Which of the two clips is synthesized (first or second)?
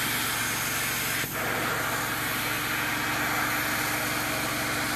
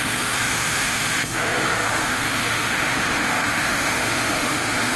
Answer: second